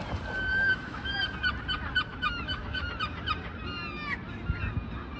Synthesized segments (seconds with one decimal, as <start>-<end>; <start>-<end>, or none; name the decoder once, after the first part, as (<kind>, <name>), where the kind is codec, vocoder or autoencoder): 0.5-1.1 (autoencoder, DAC-VAE); 2.1-2.9